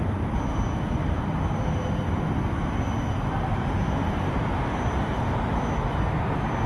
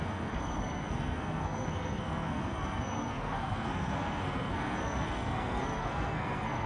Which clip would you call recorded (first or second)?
first